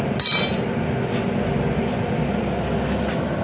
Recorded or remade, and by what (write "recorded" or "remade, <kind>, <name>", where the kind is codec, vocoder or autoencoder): recorded